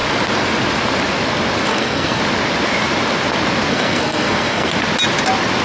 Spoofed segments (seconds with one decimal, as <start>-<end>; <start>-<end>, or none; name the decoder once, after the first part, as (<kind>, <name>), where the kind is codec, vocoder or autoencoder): 1.7-2.2 (codec, SNAC); 3.7-4.7